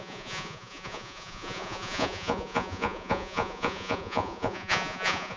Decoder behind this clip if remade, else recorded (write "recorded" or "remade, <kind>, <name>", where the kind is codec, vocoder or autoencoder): remade, vocoder, Vocos